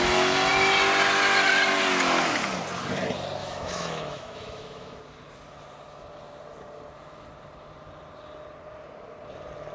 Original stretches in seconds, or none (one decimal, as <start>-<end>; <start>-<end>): 0.0-3.4; 5.0-9.7